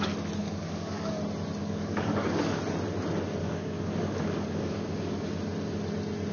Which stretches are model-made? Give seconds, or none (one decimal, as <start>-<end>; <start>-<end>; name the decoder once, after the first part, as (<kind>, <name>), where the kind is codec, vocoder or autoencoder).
0.4-1.2 (codec, DAC); 1.6-2.6; 3.4-5.3